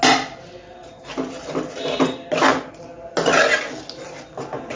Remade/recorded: recorded